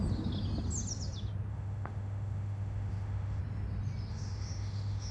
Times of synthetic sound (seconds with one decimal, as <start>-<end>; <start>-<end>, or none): 1.5-3.4; 4.1-5.1

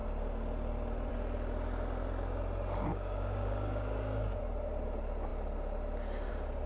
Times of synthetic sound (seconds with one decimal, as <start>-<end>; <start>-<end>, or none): 2.9-4.4

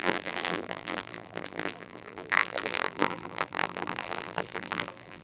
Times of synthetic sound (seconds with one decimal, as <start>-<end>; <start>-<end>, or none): 0.0-5.2

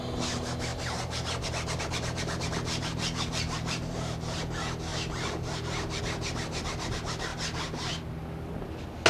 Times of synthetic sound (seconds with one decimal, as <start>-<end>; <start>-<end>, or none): 0.7-4.4; 4.9-6.0

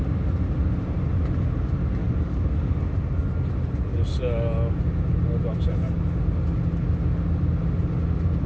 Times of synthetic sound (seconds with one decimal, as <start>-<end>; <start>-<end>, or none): 2.0-2.9